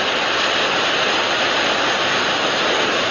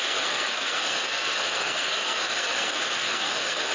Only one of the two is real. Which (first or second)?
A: first